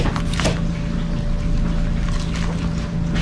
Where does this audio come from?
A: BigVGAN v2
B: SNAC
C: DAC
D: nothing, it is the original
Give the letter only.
D